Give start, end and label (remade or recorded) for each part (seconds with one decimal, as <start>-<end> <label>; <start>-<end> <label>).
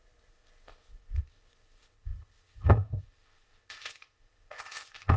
0.0-5.2 remade